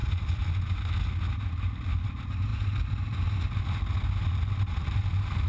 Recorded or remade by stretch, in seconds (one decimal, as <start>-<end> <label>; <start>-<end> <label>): 0.0-5.5 recorded